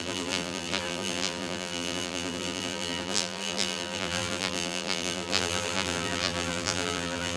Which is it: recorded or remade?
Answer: remade